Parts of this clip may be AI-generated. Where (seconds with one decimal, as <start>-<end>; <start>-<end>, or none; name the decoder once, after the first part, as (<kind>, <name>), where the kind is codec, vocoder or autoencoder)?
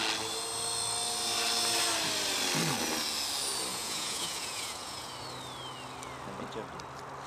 3.7-5.1 (vocoder, Vocos)